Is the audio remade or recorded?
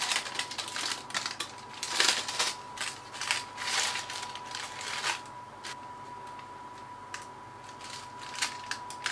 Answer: recorded